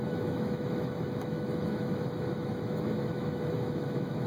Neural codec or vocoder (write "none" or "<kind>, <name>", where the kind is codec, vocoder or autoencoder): autoencoder, DAC-VAE